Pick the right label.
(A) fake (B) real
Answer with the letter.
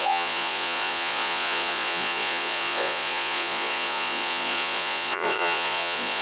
A